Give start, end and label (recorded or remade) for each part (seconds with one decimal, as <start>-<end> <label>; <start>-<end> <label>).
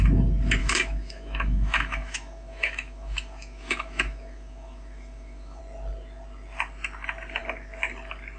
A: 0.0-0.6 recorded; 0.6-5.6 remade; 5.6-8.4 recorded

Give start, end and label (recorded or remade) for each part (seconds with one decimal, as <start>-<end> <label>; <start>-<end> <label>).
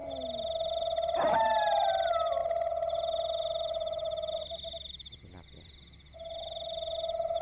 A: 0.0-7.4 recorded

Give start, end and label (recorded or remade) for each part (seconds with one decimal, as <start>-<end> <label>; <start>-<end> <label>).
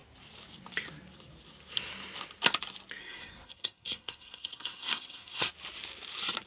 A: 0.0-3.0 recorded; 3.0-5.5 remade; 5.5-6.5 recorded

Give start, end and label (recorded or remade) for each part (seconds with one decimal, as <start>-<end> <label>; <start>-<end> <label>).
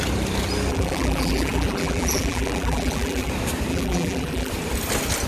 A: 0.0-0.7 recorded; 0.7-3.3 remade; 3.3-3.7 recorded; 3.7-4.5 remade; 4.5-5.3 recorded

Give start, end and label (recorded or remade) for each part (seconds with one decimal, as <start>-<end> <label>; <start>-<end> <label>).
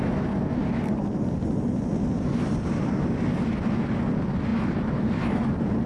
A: 0.0-0.6 recorded; 0.6-4.1 remade; 4.1-4.5 recorded; 4.5-5.2 remade; 5.2-5.9 recorded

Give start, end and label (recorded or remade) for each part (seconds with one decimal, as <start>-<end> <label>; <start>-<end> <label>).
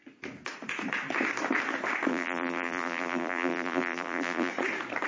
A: 0.0-2.1 recorded; 2.1-4.5 remade; 4.5-5.1 recorded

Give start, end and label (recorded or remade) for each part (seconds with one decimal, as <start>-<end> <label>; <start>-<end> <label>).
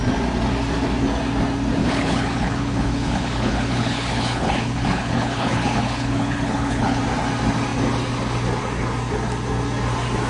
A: 0.0-1.8 recorded; 1.8-7.0 remade; 7.0-10.3 recorded